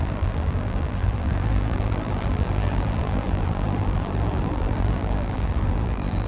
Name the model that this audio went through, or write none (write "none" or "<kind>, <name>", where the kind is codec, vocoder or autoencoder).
vocoder, BigVGAN v2